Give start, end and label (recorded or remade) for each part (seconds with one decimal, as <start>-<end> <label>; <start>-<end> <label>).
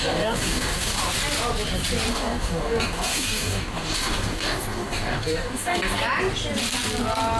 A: 0.0-1.0 remade; 1.0-2.1 recorded; 2.1-6.0 remade; 6.0-7.4 recorded